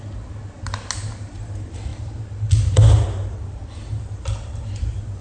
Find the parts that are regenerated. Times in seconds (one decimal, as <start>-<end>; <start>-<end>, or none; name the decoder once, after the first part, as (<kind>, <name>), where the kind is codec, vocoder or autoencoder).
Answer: none